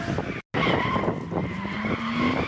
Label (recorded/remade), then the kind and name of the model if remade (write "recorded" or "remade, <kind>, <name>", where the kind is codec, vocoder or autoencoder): recorded